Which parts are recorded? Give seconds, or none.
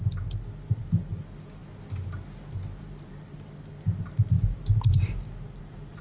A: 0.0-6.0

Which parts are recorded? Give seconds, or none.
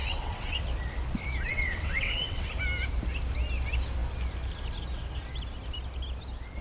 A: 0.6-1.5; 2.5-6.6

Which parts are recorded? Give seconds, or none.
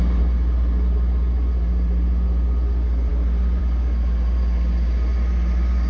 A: 0.0-5.9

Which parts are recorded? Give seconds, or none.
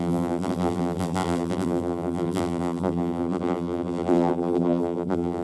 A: none